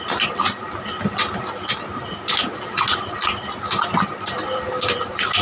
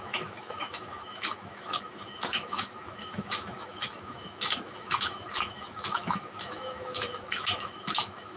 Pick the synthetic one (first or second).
second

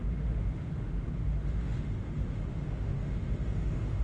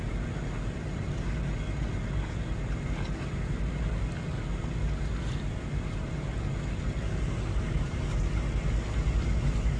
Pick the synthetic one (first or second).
first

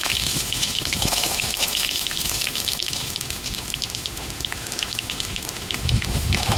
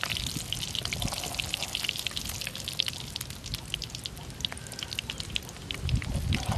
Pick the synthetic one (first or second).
first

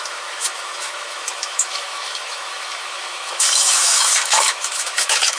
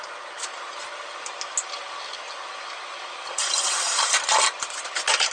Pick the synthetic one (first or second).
first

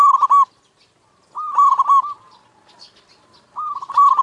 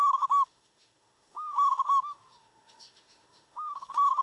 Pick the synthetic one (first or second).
second